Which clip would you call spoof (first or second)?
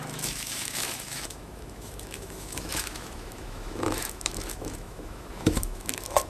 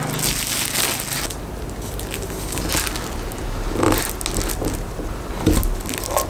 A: first